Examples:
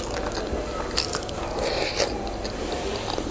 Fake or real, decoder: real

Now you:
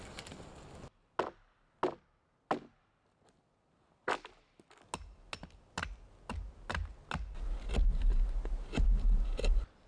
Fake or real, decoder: real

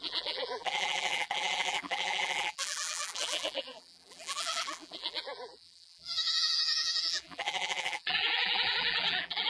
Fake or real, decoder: fake, vocoder, BigVGAN v2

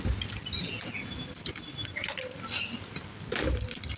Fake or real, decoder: real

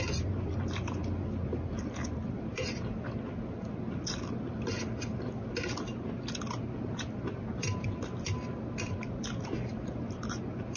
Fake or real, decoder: real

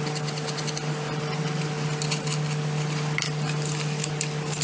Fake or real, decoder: real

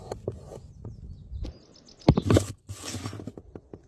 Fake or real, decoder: real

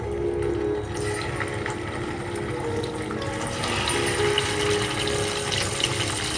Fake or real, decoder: real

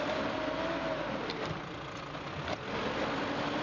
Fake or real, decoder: real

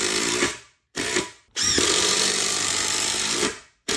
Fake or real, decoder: fake, vocoder, BigVGAN v2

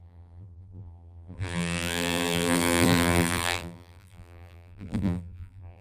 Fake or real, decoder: fake, vocoder, BigVGAN v2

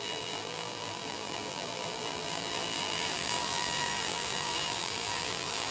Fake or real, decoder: fake, vocoder, BigVGAN v2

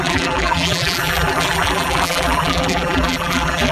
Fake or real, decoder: fake, vocoder, BigVGAN v2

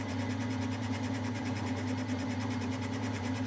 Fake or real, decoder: fake, vocoder, BigVGAN v2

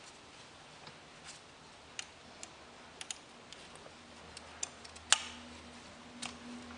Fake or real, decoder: real